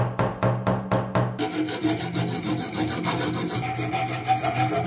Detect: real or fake real